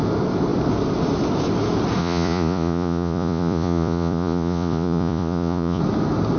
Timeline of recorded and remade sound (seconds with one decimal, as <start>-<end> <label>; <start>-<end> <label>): 0.0-2.0 recorded; 2.0-5.8 remade; 5.8-6.4 recorded